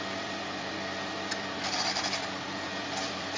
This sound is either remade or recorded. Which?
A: remade